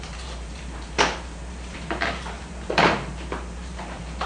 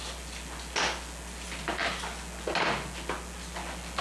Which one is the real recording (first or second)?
second